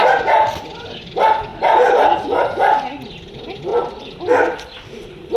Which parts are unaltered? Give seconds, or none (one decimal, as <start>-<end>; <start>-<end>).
0.0-1.5; 2.8-3.7